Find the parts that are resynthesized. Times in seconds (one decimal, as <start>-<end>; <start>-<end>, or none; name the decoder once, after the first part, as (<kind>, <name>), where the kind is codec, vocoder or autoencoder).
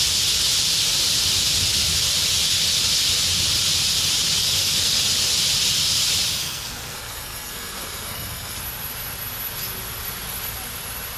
4.4-5.0 (codec, SNAC); 6.4-8.6